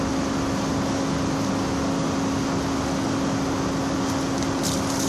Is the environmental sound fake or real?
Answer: real